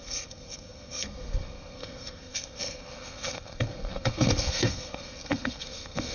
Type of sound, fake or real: fake